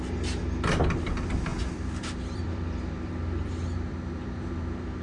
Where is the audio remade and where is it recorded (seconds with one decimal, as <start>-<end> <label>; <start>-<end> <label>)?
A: 0.0-1.5 recorded; 1.5-4.5 remade; 4.5-5.0 recorded